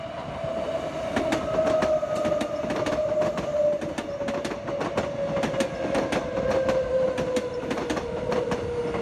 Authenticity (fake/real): real